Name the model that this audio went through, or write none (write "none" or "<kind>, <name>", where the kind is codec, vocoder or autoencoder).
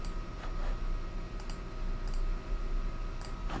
none